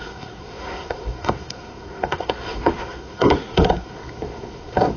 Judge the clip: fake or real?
fake